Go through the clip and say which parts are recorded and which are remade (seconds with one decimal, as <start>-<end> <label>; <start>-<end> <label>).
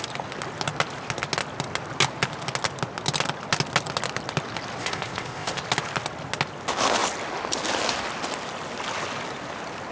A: 0.0-4.8 recorded; 4.8-5.6 remade; 5.6-9.9 recorded